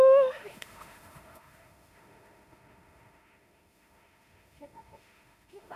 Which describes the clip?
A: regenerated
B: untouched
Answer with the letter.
A